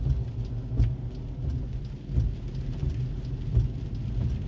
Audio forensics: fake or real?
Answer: real